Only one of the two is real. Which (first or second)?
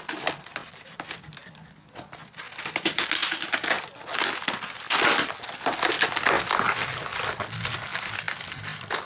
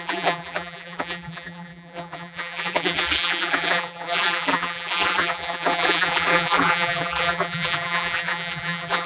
first